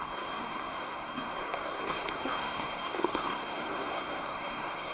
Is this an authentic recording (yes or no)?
no